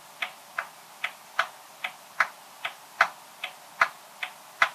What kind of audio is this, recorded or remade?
recorded